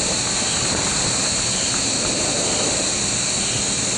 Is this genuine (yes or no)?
yes